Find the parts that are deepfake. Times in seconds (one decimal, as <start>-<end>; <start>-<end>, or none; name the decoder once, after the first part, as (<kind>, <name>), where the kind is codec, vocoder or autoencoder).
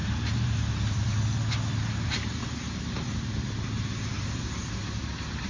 0.0-1.1 (vocoder, BigVGAN v2)